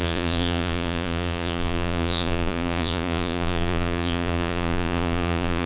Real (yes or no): no